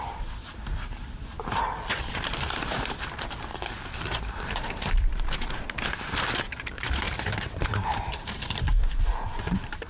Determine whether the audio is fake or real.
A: fake